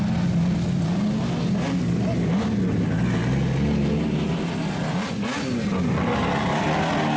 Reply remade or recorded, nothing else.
recorded